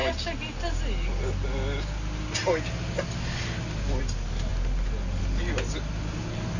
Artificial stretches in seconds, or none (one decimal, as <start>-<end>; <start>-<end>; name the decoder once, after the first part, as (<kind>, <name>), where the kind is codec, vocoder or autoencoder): none